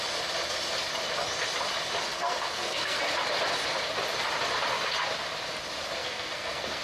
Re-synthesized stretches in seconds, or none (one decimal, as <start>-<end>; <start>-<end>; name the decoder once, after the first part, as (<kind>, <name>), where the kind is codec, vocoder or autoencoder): 2.1-3.0 (codec, SNAC); 6.0-6.8